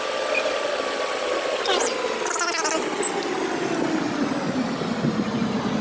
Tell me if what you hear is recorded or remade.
recorded